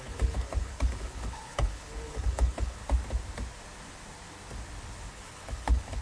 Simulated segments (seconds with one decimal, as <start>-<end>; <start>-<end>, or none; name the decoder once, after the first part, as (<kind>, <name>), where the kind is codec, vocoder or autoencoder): 0.0-2.8 (codec, HILCodec); 5.1-6.0